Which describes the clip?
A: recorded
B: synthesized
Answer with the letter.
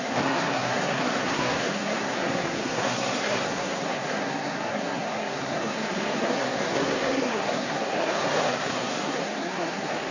B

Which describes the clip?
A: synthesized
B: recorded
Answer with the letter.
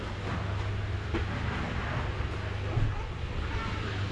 B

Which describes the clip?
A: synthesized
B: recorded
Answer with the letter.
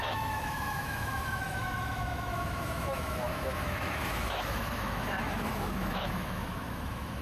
A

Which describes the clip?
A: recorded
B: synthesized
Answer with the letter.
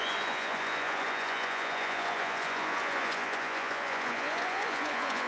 B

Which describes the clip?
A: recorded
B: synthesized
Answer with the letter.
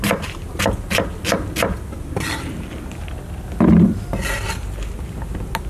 A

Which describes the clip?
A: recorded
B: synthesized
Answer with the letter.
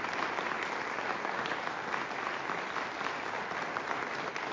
A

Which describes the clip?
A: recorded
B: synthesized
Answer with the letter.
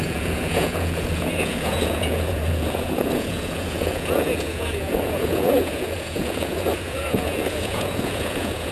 B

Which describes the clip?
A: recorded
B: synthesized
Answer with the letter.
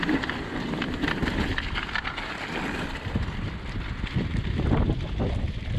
A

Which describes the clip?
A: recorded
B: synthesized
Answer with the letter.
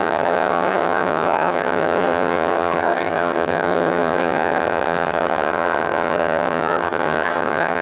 B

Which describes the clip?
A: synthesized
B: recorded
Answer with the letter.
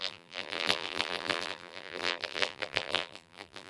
A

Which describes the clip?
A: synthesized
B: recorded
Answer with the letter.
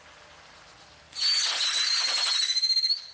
B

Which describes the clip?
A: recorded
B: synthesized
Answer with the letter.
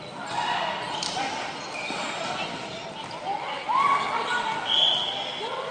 A